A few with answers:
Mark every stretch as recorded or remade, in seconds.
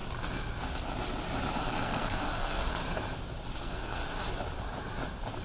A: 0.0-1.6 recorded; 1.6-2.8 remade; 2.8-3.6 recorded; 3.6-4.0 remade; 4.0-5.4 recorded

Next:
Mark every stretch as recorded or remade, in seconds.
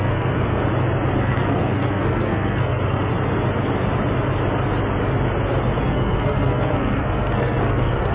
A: 0.0-0.6 remade; 0.6-1.2 recorded; 1.2-3.1 remade; 3.1-5.8 recorded; 5.8-8.1 remade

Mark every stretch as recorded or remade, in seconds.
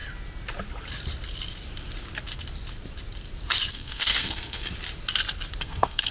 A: 0.0-3.7 recorded; 3.7-4.7 remade; 4.7-5.6 recorded; 5.6-6.1 remade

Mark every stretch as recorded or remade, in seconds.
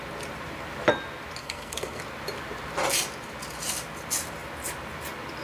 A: 0.0-1.4 recorded; 1.4-2.0 remade; 2.0-5.4 recorded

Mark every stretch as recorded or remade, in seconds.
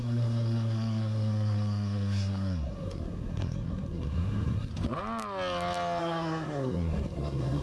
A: 0.0-4.7 remade; 4.7-6.0 recorded; 6.0-7.6 remade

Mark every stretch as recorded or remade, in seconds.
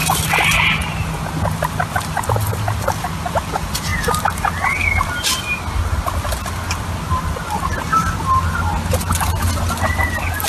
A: 0.0-10.5 recorded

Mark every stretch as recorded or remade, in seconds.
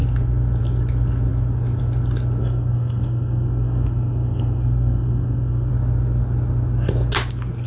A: 0.0-2.4 recorded; 2.4-5.7 remade; 5.7-7.7 recorded